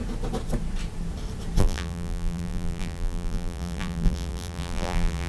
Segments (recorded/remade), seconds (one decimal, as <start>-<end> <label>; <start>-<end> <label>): 0.0-1.6 recorded; 1.6-5.3 remade